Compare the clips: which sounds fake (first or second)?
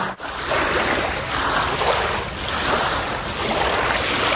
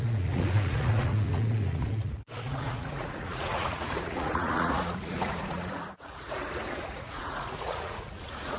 second